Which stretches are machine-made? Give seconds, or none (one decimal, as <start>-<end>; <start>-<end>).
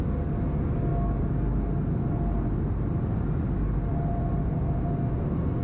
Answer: none